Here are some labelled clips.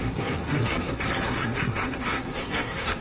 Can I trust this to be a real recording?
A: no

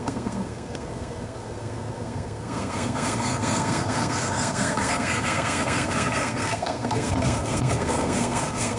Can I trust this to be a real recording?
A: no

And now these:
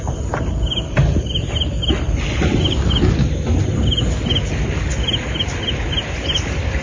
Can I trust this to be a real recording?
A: yes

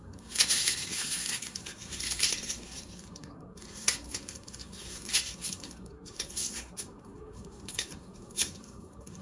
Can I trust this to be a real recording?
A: no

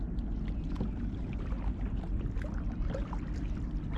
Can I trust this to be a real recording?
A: yes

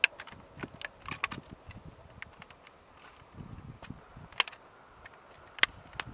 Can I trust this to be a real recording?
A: yes